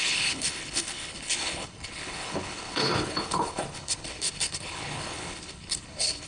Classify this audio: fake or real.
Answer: fake